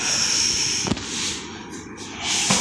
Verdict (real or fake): real